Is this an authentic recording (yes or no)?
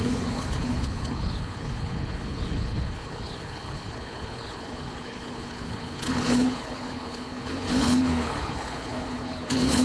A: no